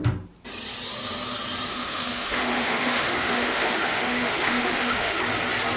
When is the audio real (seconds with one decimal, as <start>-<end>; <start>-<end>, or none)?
0.0-1.7; 5.2-5.8